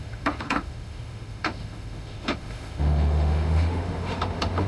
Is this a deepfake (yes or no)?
yes